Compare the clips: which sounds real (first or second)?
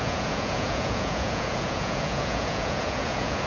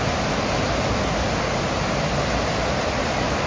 second